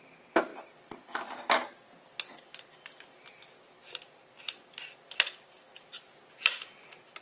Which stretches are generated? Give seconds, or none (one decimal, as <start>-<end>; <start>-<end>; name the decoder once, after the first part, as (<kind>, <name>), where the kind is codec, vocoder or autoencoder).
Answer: none